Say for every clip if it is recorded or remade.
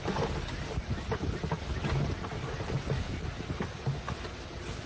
recorded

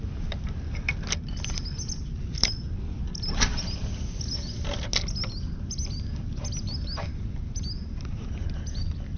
recorded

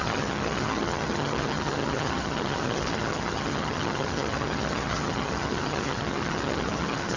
remade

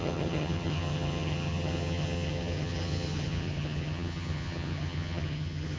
remade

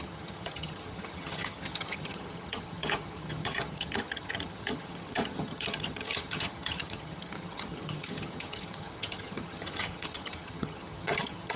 remade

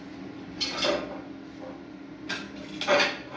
recorded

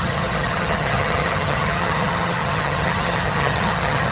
remade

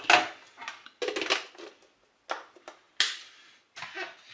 recorded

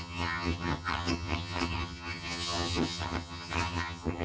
remade